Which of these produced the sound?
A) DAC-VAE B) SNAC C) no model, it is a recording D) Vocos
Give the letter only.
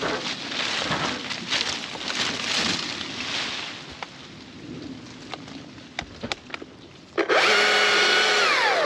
C